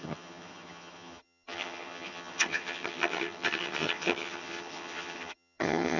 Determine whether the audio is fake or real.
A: fake